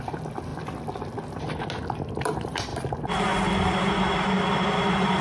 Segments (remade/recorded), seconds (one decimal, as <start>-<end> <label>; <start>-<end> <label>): 0.0-5.2 recorded